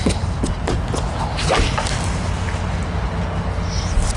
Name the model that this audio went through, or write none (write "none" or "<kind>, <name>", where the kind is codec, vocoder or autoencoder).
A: none